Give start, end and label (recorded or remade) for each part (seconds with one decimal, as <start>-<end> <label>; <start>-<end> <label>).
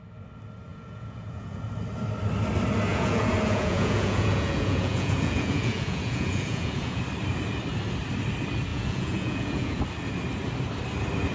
0.0-0.7 recorded; 0.7-1.6 remade; 1.6-2.9 recorded; 2.9-7.0 remade; 7.0-8.7 recorded; 8.7-9.8 remade; 9.8-11.3 recorded